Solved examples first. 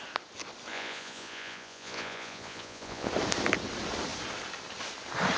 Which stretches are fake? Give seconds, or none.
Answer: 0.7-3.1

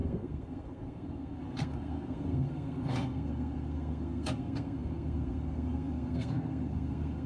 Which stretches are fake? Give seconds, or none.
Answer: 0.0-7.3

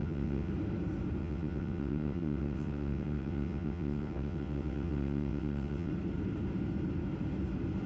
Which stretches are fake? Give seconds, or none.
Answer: 0.0-0.5; 1.2-5.9

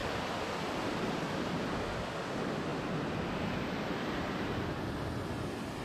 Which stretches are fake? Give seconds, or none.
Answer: none

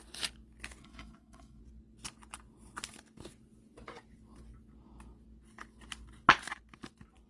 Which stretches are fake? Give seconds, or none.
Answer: 0.8-1.6

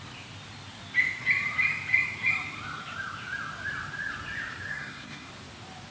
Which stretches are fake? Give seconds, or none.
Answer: 4.7-5.3

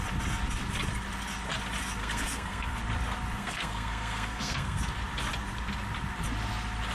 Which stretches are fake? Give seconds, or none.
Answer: 2.0-2.8; 3.4-4.8